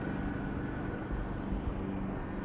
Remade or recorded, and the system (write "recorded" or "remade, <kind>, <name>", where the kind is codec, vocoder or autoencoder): recorded